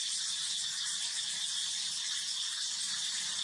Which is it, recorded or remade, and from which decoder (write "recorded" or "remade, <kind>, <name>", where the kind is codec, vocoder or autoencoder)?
recorded